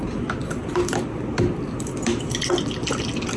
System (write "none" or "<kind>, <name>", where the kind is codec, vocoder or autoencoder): none